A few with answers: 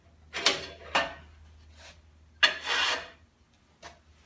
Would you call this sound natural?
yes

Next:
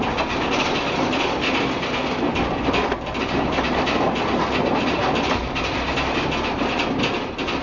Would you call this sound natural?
yes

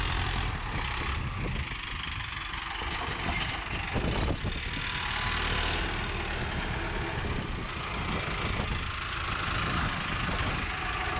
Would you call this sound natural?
yes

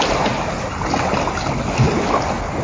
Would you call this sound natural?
yes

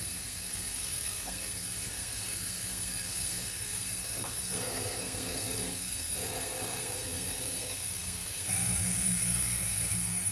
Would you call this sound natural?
no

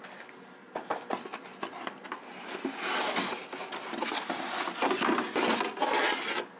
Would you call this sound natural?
yes